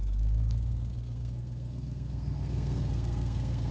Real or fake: fake